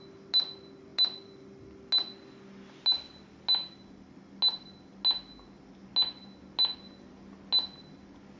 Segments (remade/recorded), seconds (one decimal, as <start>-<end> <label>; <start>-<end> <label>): 0.0-8.4 recorded